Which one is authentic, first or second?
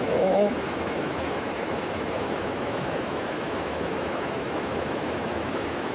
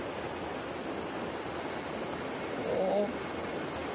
second